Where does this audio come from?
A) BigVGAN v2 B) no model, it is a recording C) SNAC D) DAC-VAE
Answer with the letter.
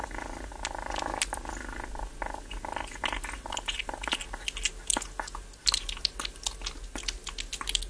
B